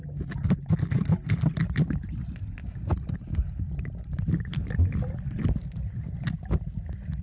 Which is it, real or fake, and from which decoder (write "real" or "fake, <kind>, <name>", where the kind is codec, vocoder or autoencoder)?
real